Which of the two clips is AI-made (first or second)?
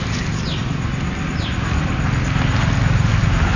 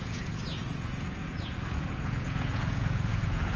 second